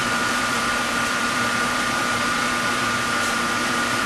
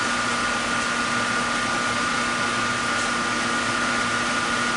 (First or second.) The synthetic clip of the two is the first